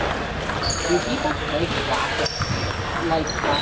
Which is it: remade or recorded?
recorded